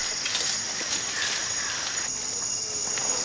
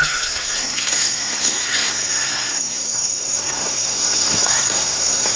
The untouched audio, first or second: first